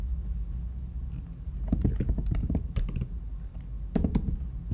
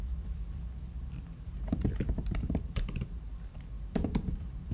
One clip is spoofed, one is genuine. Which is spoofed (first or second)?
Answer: second